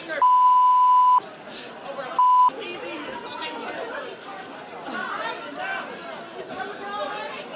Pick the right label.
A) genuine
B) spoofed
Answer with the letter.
A